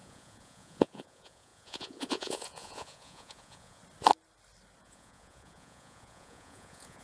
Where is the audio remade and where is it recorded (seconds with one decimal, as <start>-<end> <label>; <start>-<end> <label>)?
0.0-3.8 remade; 3.8-4.8 recorded; 4.8-7.0 remade